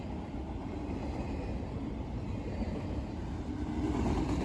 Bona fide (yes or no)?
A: yes